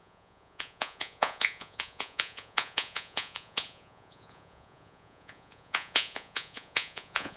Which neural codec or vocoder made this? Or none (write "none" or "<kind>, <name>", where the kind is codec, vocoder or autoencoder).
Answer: vocoder, Vocos